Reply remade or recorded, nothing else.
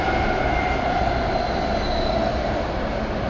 recorded